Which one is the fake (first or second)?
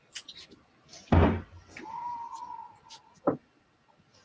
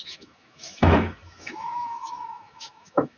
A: second